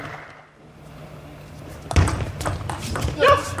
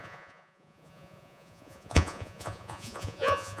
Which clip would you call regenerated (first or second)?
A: second